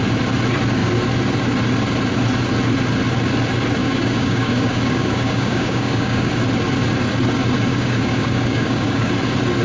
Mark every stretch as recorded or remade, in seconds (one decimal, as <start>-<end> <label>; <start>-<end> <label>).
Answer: 0.0-3.8 recorded; 3.8-6.4 remade; 6.4-7.7 recorded; 7.7-9.1 remade; 9.1-9.6 recorded